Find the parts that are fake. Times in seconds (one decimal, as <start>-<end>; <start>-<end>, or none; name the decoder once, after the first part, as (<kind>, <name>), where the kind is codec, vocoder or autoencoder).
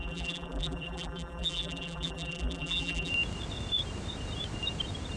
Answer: 0.0-3.1 (vocoder, BigVGAN v2)